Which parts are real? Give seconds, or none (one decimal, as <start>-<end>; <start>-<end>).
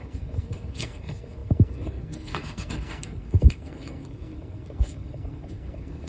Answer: none